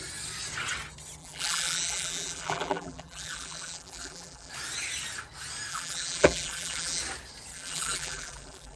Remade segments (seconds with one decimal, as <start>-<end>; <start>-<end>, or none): 1.2-4.5; 5.7-7.0; 7.5-8.8

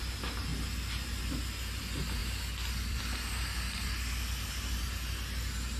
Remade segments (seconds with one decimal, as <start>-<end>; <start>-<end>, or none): 2.2-3.0

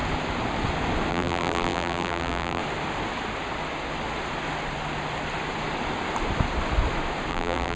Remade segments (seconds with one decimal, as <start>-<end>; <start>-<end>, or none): 1.1-2.6; 7.3-7.8